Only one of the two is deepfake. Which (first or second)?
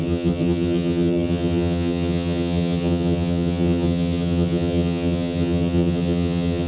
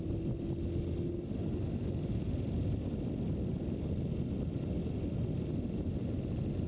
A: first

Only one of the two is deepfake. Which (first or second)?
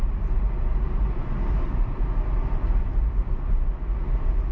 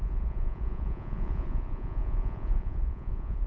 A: second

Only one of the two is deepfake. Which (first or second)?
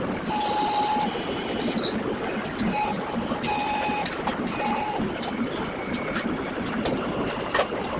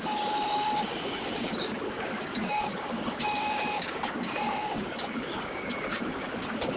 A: second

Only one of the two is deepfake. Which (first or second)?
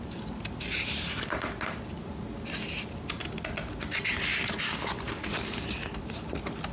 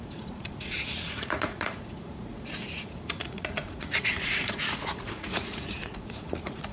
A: second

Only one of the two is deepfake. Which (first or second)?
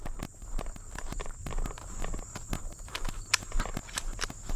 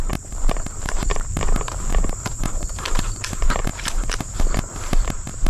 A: second